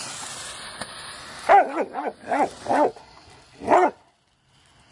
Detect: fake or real real